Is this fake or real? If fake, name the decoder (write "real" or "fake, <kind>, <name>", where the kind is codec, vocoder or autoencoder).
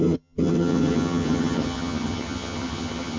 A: fake, vocoder, HiFi-GAN